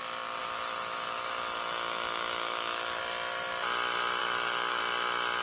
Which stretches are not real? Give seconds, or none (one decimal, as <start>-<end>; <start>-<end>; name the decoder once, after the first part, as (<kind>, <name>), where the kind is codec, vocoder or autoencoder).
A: 0.4-3.0 (autoencoder, DAC-VAE); 4.2-4.8